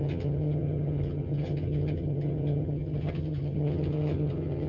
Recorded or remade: remade